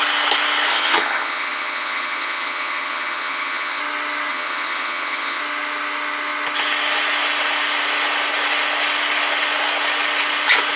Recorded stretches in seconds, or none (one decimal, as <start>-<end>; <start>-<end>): 0.0-0.7; 3.8-4.3; 5.4-10.8